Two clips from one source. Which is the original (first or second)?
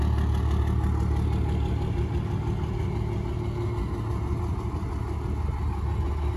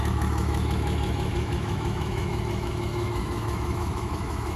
first